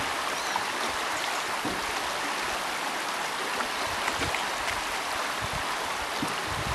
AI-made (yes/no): no